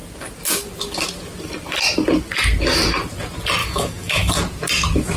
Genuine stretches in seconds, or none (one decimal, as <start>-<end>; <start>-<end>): 0.0-3.6; 4.3-5.2